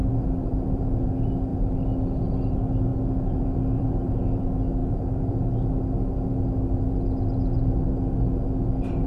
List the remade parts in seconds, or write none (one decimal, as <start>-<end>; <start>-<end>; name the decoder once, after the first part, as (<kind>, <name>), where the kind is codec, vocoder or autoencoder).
0.0-1.1 (vocoder, BigVGAN v2); 2.9-4.2; 4.8-5.5